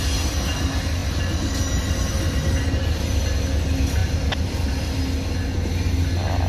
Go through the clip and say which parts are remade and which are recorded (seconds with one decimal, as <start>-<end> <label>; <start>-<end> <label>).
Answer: 0.0-6.5 recorded